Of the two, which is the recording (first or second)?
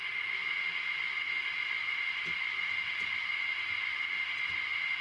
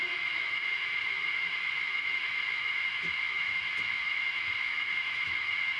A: first